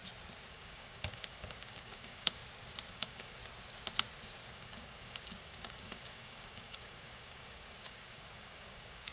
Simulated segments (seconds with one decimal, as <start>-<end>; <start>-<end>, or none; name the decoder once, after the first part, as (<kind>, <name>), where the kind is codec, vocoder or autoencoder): 0.5-2.4 (codec, DAC); 2.9-3.4; 4.5-9.1